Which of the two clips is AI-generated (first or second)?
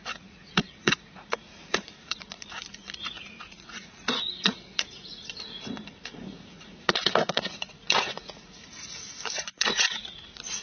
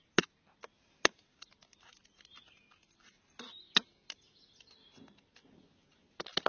first